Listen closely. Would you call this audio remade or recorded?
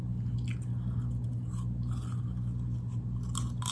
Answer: recorded